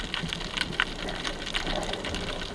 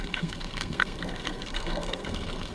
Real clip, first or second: first